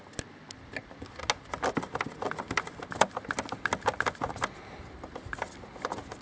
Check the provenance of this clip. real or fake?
real